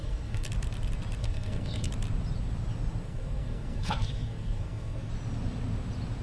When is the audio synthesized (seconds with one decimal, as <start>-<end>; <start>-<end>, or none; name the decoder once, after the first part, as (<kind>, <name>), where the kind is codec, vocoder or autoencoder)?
0.0-0.5 (codec, SNAC); 1.2-1.9; 3.0-5.1